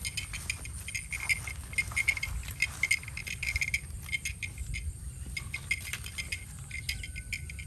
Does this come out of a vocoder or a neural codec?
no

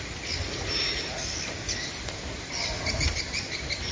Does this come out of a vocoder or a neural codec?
no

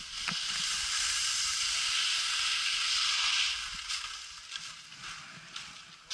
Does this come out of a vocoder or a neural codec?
no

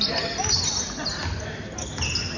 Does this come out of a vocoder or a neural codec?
no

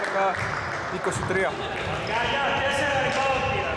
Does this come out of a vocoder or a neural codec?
no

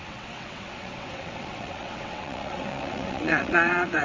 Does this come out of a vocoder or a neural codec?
yes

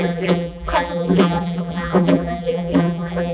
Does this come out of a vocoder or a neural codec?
yes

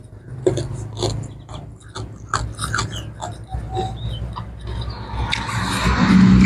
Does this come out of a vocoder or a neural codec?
no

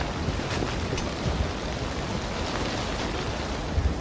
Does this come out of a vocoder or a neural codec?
no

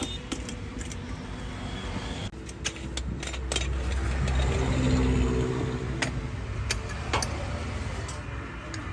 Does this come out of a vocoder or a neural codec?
no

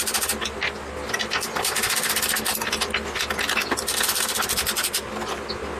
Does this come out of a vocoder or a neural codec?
no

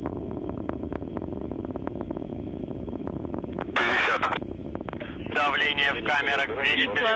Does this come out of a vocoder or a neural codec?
yes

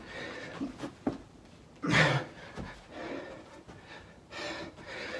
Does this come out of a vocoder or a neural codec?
no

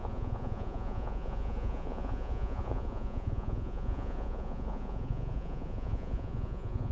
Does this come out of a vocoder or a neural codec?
yes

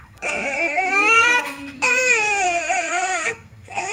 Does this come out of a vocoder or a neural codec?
yes